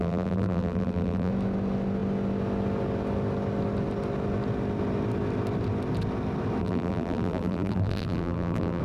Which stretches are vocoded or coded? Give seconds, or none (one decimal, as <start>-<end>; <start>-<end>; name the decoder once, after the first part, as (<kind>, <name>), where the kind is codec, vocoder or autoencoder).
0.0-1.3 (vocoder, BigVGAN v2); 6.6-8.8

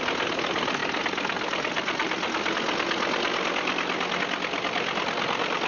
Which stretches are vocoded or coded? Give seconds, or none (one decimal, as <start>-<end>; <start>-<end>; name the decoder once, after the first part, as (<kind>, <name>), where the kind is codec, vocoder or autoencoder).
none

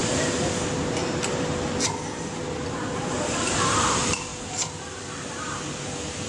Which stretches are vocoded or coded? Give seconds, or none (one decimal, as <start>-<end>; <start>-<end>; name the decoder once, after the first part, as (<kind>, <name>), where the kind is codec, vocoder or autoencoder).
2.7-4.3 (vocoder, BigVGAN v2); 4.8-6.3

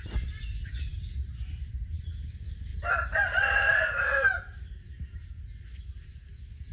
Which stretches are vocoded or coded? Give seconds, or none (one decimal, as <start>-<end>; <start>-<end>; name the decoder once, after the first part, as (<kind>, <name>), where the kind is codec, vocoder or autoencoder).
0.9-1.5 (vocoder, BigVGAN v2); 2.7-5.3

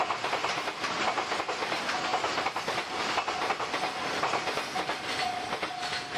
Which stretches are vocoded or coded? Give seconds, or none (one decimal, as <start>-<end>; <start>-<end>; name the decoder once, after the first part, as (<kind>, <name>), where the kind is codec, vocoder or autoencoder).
0.4-1.4 (vocoder, BigVGAN v2)

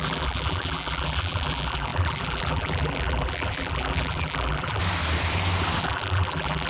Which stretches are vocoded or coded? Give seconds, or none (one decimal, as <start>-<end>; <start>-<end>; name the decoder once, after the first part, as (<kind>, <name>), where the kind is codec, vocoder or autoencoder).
0.0-4.8 (vocoder, BigVGAN v2); 5.8-6.7